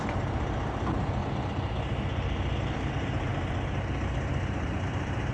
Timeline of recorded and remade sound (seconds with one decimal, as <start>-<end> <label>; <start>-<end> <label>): 0.0-1.2 remade; 1.2-2.6 recorded; 2.6-3.3 remade; 3.3-4.3 recorded; 4.3-5.3 remade